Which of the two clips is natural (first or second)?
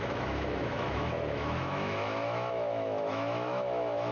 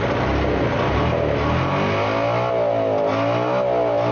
second